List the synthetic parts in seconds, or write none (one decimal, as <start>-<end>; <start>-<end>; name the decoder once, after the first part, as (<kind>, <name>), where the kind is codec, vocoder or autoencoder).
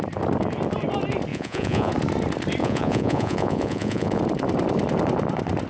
1.3-1.9 (vocoder, Vocos); 2.6-4.2